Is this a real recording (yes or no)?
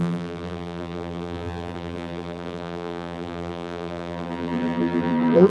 no